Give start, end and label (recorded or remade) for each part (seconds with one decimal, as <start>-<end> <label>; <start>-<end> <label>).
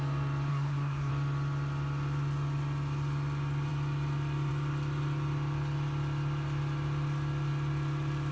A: 0.0-0.5 recorded; 0.5-1.1 remade; 1.1-8.3 recorded